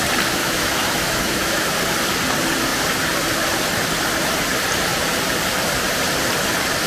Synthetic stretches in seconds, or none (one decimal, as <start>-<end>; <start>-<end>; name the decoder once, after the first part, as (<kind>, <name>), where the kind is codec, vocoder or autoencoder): 0.4-1.6 (autoencoder, DAC-VAE)